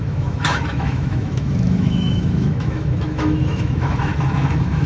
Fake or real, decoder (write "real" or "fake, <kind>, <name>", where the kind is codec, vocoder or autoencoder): fake, autoencoder, DAC-VAE